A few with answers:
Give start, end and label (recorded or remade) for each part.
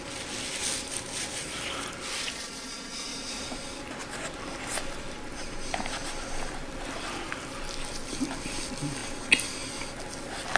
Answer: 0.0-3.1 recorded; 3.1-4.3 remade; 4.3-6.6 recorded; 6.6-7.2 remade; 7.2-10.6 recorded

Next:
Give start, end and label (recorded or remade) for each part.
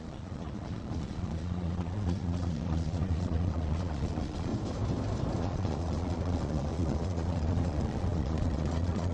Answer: 0.0-4.5 remade; 4.5-5.4 recorded; 5.4-9.1 remade